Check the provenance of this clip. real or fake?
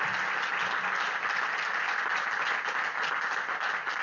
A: real